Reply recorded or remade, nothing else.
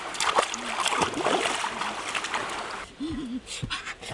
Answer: recorded